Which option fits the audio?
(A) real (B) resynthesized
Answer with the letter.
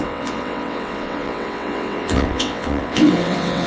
B